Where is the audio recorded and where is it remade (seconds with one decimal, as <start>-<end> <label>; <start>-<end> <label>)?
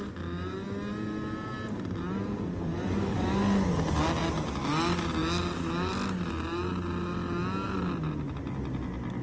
0.0-9.2 recorded